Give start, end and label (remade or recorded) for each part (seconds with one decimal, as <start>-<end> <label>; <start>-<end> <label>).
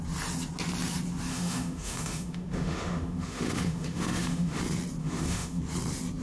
0.0-1.3 recorded; 1.3-4.6 remade; 4.6-5.0 recorded; 5.0-5.6 remade; 5.6-6.2 recorded